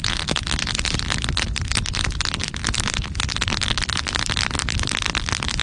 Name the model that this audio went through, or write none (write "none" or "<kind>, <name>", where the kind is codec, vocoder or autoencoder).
none